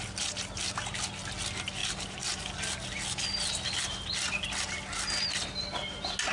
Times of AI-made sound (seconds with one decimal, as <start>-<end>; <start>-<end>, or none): none